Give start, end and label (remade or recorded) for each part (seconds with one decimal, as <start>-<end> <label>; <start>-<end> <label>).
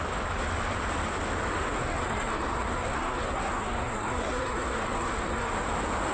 0.0-1.8 recorded; 1.8-5.5 remade; 5.5-6.1 recorded